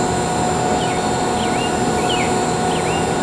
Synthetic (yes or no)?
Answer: no